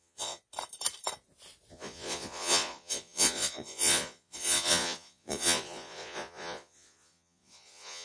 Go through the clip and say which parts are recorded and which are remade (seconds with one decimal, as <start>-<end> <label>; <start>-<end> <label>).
0.0-0.4 remade; 0.4-1.7 recorded; 1.7-8.0 remade